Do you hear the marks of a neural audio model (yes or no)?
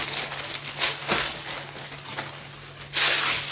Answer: no